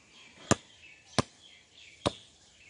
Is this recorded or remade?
recorded